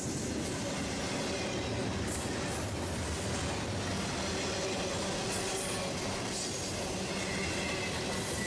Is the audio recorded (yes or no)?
yes